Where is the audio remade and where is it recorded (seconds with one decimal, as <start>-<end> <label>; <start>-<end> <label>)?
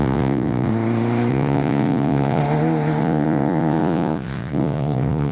0.0-0.7 remade; 0.7-1.3 recorded; 1.3-2.4 remade; 2.4-3.0 recorded; 3.0-5.3 remade